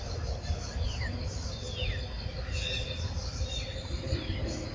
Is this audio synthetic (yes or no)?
no